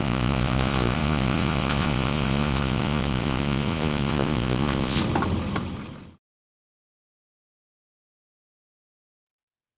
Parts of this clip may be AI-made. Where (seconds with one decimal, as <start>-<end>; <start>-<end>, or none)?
0.0-5.0; 6.3-9.8

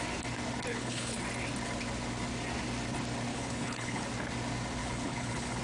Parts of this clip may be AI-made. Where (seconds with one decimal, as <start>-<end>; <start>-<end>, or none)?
0.7-1.2; 3.3-4.1; 4.8-5.6

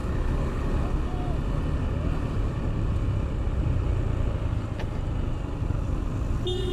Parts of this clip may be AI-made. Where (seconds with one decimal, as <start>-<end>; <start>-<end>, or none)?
0.0-0.7

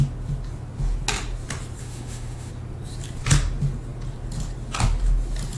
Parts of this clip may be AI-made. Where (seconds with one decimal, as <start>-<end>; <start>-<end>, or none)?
1.8-2.5

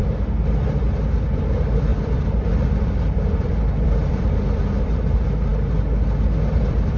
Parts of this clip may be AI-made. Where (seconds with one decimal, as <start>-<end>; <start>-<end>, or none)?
1.1-5.5; 6.6-7.0